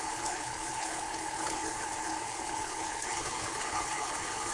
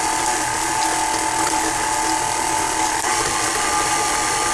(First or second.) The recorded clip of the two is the second